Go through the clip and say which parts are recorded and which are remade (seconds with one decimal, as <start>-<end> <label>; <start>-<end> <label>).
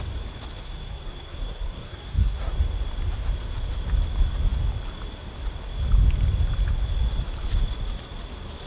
0.0-0.6 recorded; 0.6-2.5 remade; 2.5-8.7 recorded